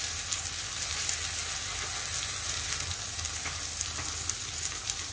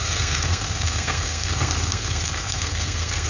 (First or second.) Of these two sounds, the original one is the first